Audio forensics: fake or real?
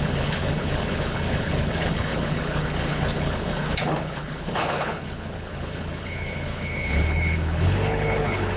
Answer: fake